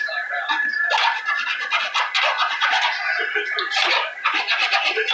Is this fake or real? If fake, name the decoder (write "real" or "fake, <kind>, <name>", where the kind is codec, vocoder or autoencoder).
real